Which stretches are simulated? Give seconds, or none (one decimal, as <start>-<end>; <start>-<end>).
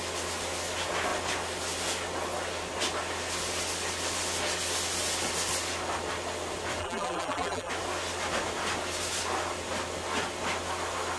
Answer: 6.8-7.7